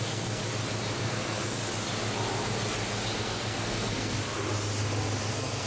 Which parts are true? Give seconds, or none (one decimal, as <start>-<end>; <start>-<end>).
0.4-1.0; 1.6-3.2; 4.2-5.3